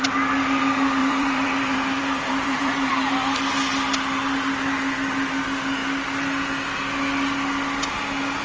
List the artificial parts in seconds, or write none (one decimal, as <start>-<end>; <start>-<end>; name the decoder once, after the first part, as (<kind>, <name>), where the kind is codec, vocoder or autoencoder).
1.0-3.1 (vocoder, BigVGAN v2)